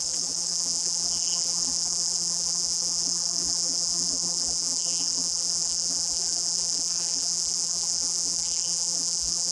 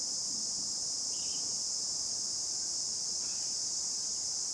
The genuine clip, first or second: second